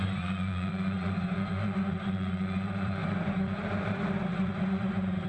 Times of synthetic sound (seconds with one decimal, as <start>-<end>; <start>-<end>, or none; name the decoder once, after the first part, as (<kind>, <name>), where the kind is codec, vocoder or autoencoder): 0.0-5.3 (vocoder, Vocos)